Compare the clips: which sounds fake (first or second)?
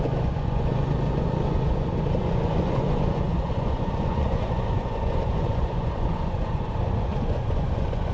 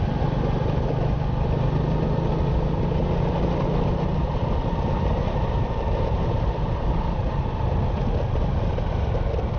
first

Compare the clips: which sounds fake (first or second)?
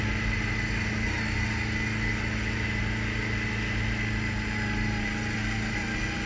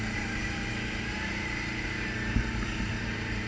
second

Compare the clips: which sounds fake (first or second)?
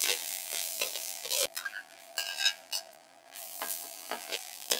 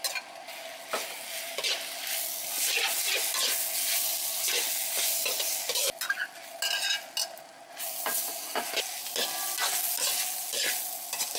first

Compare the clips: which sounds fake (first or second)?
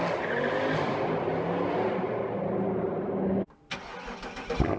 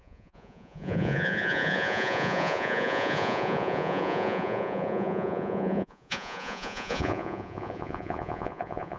second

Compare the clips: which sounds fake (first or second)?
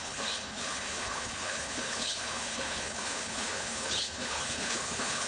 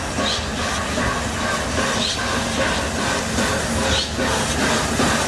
first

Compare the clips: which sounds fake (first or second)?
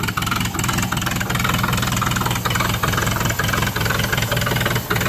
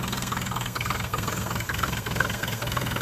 second